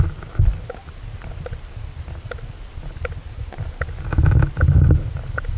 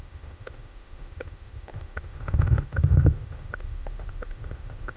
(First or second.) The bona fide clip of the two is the first